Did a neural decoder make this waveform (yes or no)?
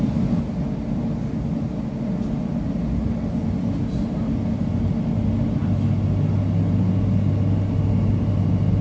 no